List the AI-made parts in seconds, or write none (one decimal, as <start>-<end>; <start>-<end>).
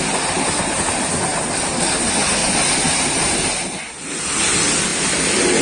1.3-1.9